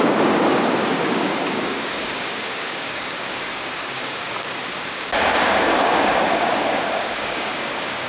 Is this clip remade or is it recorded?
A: remade